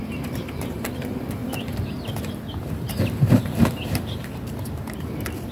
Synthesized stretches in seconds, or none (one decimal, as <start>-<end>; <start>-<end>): 0.0-1.4; 2.1-5.5